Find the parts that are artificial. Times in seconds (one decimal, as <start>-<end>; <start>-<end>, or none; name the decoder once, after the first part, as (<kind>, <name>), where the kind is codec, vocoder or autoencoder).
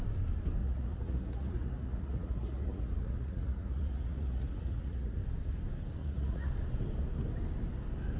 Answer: 0.6-5.2 (vocoder, Vocos); 6.0-6.5